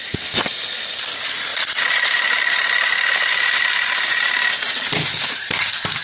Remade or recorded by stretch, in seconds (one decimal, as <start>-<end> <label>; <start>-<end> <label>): 0.0-6.0 recorded